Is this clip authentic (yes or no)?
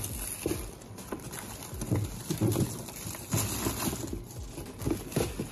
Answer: yes